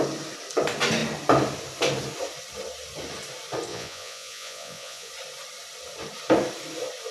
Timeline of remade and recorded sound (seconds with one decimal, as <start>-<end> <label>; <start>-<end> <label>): 0.0-3.7 recorded; 3.7-5.1 remade; 5.1-7.1 recorded

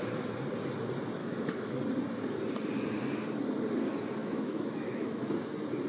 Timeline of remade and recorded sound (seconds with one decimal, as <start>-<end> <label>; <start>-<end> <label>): 0.0-1.2 recorded; 1.2-1.8 remade; 1.8-4.2 recorded; 4.2-5.3 remade; 5.3-5.9 recorded

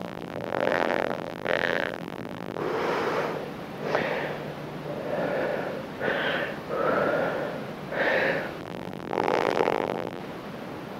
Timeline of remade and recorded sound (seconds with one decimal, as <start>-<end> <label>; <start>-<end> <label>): 0.0-2.6 remade; 2.6-8.6 recorded; 8.6-10.2 remade; 10.2-11.0 recorded

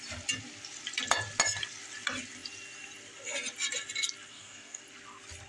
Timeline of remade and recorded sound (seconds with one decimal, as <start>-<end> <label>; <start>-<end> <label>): 0.0-4.3 recorded; 4.3-4.8 remade; 4.8-5.5 recorded